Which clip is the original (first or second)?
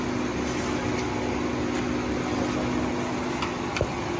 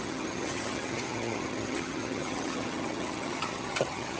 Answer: first